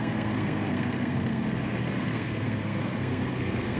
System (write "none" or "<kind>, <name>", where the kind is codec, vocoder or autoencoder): codec, SNAC